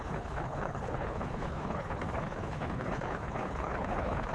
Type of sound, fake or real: fake